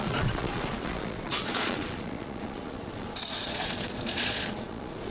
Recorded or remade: remade